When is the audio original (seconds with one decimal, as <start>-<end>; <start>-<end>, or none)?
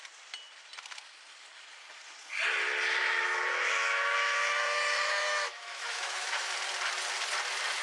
0.0-3.0; 6.5-7.8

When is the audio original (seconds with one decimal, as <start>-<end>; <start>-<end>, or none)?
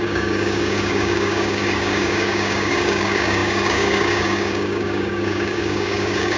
none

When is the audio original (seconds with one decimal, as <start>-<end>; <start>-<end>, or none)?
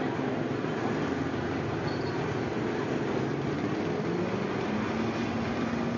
0.0-6.0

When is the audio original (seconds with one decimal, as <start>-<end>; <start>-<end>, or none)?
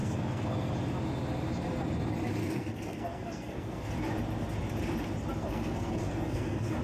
0.7-2.4; 3.9-5.4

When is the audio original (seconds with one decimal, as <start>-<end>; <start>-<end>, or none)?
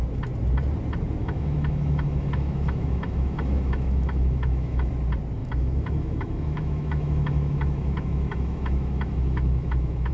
0.0-1.2; 4.9-5.4